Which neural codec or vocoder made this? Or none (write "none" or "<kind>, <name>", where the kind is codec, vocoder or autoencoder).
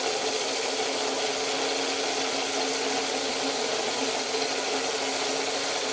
none